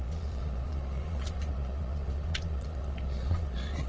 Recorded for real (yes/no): no